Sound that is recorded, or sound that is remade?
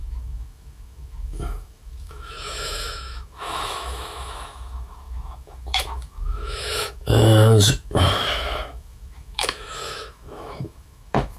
remade